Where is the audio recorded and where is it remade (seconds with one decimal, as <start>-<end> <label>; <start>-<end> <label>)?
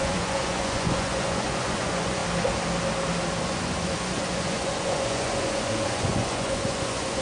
0.0-2.2 remade; 2.2-3.4 recorded; 3.4-7.2 remade